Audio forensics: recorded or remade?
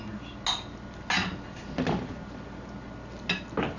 recorded